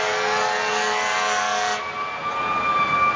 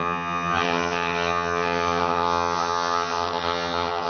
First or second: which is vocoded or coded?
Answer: second